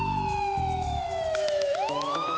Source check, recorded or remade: remade